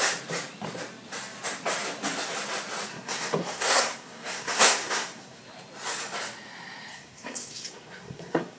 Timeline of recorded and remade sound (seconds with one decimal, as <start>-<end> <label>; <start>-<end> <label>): 0.0-2.9 recorded; 2.9-5.4 remade; 5.4-6.9 recorded; 6.9-8.6 remade